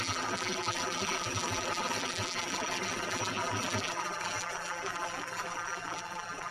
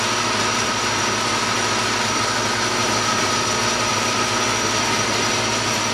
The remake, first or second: first